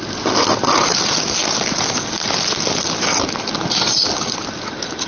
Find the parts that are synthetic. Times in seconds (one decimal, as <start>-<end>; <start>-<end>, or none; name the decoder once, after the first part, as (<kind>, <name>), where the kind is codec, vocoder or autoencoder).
none